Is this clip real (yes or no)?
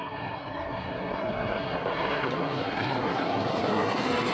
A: no